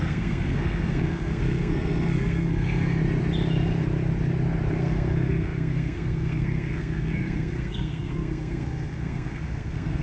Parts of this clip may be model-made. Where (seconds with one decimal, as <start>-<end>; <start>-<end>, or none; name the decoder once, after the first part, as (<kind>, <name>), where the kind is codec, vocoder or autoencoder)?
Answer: 0.0-3.0 (codec, SNAC); 4.8-10.0